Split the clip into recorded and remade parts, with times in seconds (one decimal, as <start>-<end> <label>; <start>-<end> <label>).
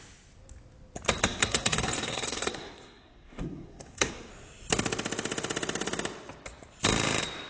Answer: 0.0-1.2 recorded; 1.2-4.3 remade; 4.3-7.5 recorded